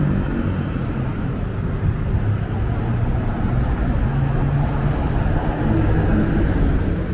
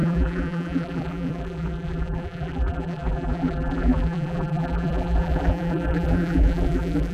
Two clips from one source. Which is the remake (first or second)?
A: second